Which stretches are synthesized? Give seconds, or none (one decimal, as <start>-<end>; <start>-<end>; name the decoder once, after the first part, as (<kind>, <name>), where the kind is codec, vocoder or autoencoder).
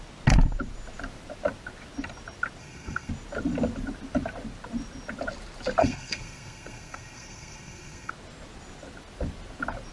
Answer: 2.6-3.1 (codec, SNAC); 5.8-8.1